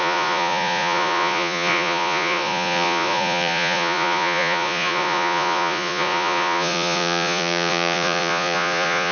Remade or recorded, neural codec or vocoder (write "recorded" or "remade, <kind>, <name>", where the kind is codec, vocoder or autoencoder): remade, vocoder, Vocos